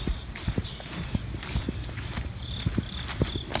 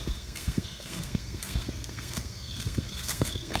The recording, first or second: first